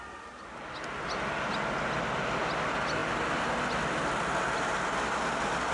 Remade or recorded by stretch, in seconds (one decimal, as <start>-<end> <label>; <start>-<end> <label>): 0.0-5.7 recorded